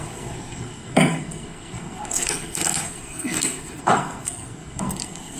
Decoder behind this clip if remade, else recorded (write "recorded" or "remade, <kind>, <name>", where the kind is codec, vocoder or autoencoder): remade, codec, SNAC